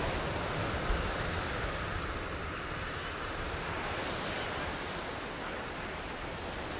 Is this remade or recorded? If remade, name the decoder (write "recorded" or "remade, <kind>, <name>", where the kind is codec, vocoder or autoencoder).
recorded